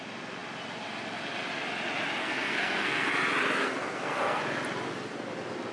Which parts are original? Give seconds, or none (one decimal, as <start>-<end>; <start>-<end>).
0.0-2.2; 3.1-3.6; 4.4-5.7